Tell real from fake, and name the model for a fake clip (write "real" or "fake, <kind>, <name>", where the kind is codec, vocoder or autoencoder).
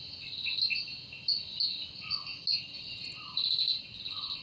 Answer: real